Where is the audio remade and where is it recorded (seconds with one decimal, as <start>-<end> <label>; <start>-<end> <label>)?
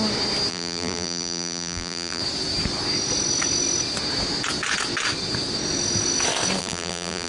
0.0-0.5 recorded; 0.5-2.2 remade; 2.2-6.6 recorded; 6.6-7.3 remade